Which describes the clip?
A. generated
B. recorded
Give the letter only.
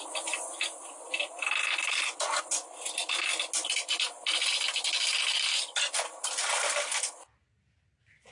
B